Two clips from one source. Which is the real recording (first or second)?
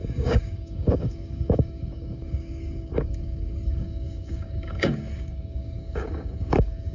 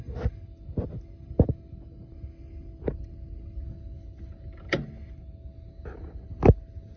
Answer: second